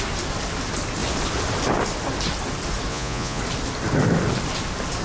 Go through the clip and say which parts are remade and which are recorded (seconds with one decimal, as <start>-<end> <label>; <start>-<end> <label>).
0.0-2.9 recorded; 2.9-3.4 remade; 3.4-5.0 recorded